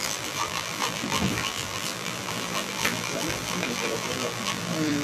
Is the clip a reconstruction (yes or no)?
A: yes